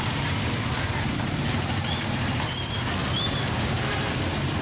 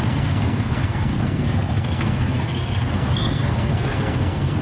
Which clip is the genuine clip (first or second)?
first